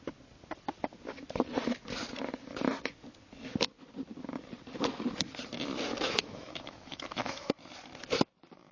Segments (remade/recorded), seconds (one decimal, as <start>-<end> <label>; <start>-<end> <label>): 0.0-5.9 recorded; 5.9-7.5 remade; 7.5-8.7 recorded